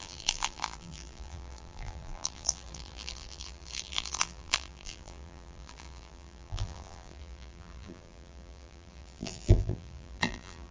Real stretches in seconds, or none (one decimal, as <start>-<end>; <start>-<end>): none